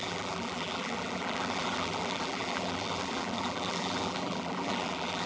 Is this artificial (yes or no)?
yes